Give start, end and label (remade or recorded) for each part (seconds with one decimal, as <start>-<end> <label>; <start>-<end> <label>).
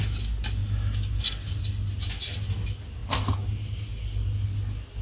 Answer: 0.0-5.0 recorded